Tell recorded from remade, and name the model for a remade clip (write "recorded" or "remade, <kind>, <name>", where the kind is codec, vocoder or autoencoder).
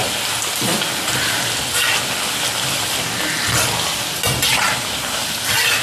recorded